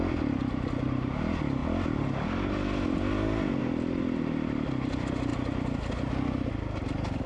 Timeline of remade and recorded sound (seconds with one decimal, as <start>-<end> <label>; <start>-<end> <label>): 0.0-7.3 recorded

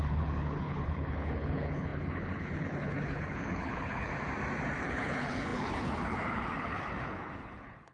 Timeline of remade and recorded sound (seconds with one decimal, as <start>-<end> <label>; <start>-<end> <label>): 0.0-4.1 remade; 4.1-4.8 recorded; 4.8-7.9 remade

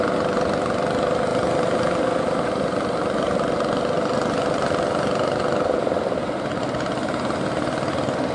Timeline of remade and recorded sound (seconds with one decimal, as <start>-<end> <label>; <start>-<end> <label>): 0.0-8.3 recorded

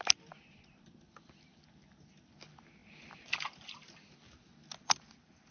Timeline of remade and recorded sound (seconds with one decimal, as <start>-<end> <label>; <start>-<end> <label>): 0.0-5.5 recorded

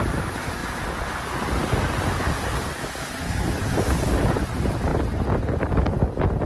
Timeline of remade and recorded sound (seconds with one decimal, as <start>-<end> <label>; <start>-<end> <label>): 0.0-6.5 recorded

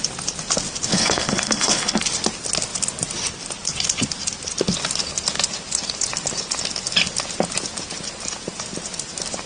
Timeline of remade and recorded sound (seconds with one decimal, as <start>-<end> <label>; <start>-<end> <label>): 0.0-0.9 recorded; 0.9-2.0 remade; 2.0-9.5 recorded

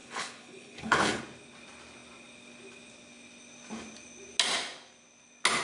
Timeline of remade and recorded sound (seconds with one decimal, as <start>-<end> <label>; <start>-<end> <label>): 0.0-1.2 remade; 1.2-5.6 recorded